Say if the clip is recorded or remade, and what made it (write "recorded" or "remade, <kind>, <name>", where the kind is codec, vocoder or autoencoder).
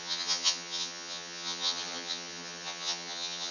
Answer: remade, vocoder, HiFi-GAN